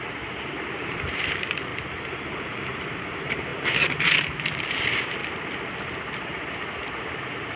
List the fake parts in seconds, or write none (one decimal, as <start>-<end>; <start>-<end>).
0.0-1.7; 2.6-5.2; 7.1-7.6